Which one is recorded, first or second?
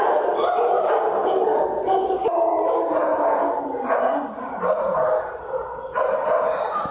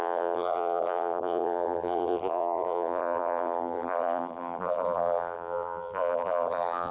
first